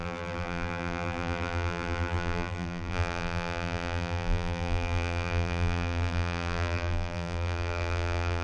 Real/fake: fake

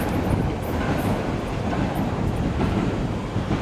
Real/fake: real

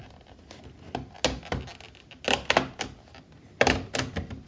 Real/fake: real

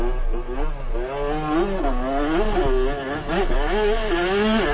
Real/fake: real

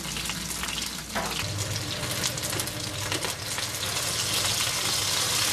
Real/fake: real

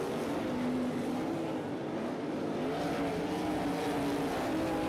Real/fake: real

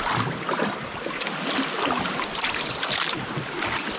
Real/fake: real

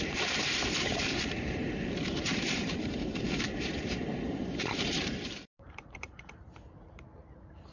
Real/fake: fake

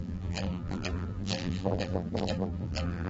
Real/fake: fake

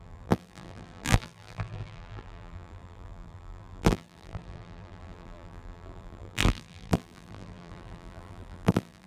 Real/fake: fake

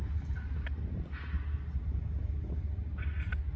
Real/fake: real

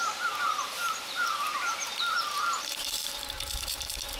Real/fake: fake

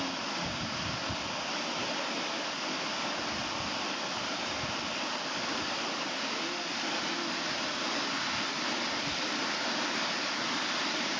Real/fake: real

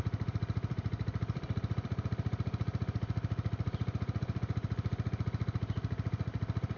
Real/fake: fake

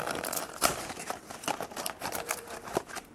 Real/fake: fake